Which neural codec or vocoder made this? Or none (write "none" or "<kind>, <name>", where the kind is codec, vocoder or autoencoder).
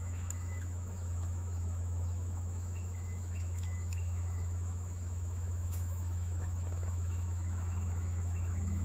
autoencoder, DAC-VAE